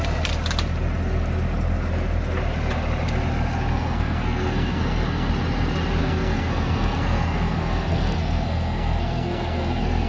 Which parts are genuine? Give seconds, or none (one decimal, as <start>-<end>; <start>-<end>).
0.0-3.7; 5.3-6.0